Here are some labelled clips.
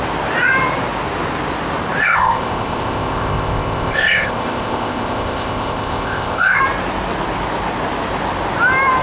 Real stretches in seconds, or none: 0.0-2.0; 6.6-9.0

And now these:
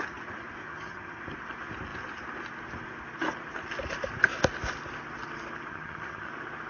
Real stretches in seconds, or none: 0.0-0.6; 1.2-5.7; 6.3-6.7

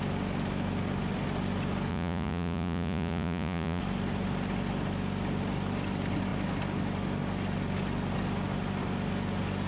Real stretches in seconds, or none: 0.0-1.9; 3.8-9.7

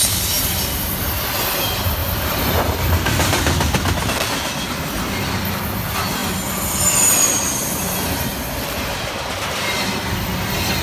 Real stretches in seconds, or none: 0.0-2.0; 2.6-10.8

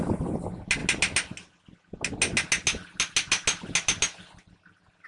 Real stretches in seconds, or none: 0.0-5.1

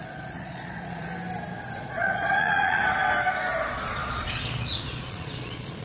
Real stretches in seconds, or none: 1.1-1.8; 2.8-3.6